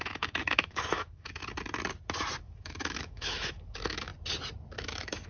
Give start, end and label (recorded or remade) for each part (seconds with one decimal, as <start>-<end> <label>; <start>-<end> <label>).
0.0-1.4 remade; 1.4-2.4 recorded; 2.4-4.1 remade; 4.1-4.7 recorded; 4.7-5.3 remade

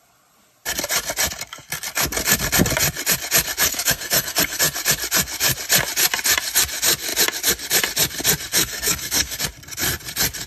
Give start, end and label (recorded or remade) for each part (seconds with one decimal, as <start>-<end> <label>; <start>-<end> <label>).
0.0-3.7 recorded; 3.7-4.6 remade; 4.6-8.5 recorded; 8.5-9.4 remade; 9.4-10.5 recorded

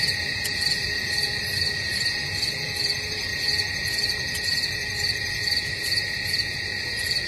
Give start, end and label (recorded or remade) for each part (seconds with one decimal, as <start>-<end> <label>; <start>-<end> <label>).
0.0-7.3 remade

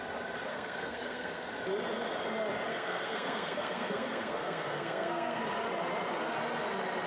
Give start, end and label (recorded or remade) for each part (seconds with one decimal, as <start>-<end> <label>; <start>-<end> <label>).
0.0-0.5 recorded; 0.5-1.5 remade; 1.5-2.7 recorded; 2.7-5.4 remade; 5.4-7.1 recorded

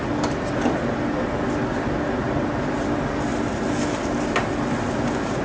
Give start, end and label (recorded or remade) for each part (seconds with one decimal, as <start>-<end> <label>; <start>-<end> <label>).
0.0-5.4 recorded

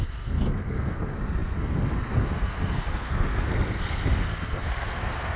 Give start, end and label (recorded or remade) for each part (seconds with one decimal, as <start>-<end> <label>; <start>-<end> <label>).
0.0-5.4 remade

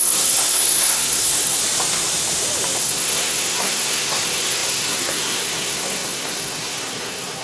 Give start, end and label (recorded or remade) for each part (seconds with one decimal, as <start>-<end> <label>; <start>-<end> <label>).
0.0-1.6 remade; 1.6-2.8 recorded; 2.8-7.4 remade

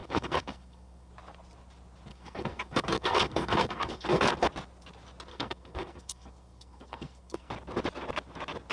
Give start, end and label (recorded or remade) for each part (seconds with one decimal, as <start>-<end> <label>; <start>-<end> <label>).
0.0-1.1 remade; 1.1-2.1 recorded; 2.1-4.3 remade; 4.3-5.3 recorded; 5.3-7.5 remade; 7.5-8.7 recorded